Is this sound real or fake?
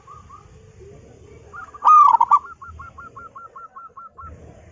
real